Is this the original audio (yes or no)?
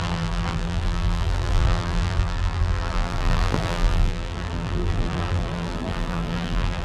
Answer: no